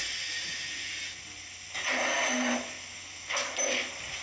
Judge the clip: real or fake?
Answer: real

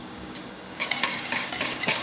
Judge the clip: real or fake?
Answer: fake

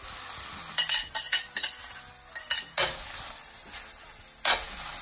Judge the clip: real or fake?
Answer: real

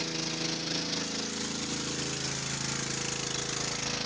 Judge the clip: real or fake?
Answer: real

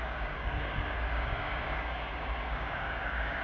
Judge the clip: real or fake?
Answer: fake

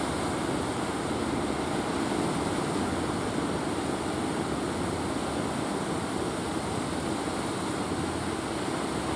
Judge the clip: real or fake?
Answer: real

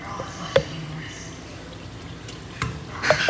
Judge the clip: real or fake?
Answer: real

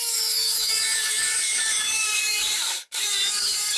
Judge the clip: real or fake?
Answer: fake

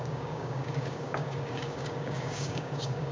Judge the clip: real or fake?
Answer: fake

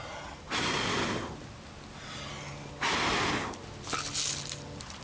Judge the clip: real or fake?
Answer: real